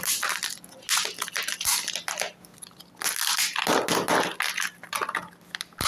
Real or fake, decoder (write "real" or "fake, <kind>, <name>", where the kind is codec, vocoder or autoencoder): real